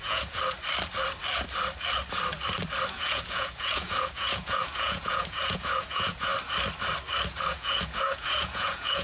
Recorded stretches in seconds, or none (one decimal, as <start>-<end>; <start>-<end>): 0.4-2.9; 6.3-7.5